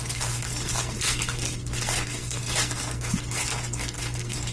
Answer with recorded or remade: remade